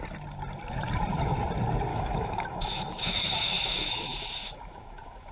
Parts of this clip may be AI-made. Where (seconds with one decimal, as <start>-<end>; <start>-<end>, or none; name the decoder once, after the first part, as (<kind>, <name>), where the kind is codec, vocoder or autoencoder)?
1.9-5.3 (autoencoder, DAC-VAE)